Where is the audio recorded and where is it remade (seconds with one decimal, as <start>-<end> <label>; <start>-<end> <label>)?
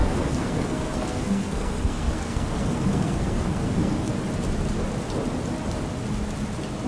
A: 0.0-4.1 remade; 4.1-6.9 recorded